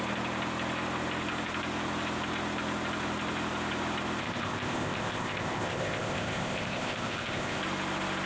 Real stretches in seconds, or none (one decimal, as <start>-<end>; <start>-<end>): 0.0-4.2; 7.6-8.3